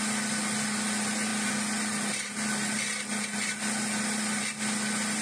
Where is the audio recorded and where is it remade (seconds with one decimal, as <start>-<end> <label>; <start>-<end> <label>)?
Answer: 0.0-5.2 recorded